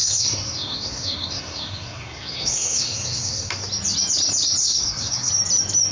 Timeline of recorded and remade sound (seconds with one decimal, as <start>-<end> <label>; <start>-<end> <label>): 0.0-3.5 remade; 3.5-4.6 recorded; 4.6-5.3 remade; 5.3-5.9 recorded